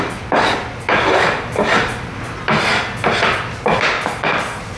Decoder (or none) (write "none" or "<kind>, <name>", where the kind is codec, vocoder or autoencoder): none